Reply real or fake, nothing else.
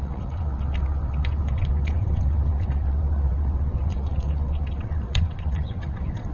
fake